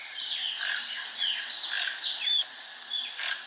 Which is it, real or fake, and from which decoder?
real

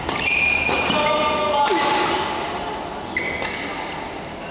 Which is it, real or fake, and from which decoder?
real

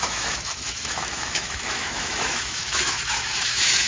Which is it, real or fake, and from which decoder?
fake, autoencoder, DAC-VAE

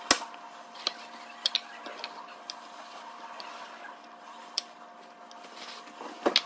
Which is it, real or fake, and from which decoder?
real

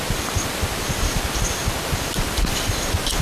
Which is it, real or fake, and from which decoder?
real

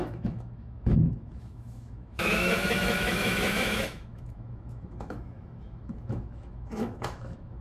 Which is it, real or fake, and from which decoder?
fake, autoencoder, DAC-VAE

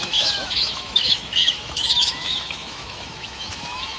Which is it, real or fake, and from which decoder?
fake, autoencoder, DAC-VAE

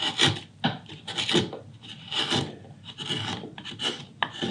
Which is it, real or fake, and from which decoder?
real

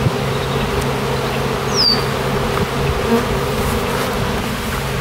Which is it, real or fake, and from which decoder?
real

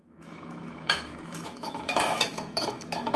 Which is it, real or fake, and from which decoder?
fake, autoencoder, DAC-VAE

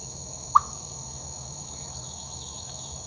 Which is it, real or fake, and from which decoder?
fake, autoencoder, DAC-VAE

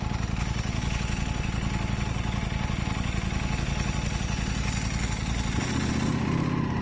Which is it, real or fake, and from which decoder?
real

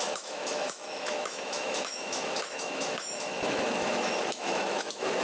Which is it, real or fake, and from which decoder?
fake, autoencoder, DAC-VAE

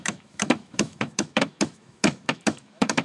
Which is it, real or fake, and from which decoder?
fake, autoencoder, DAC-VAE